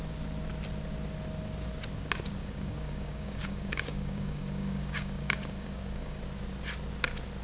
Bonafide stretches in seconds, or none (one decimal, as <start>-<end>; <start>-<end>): 0.0-2.4; 6.2-7.4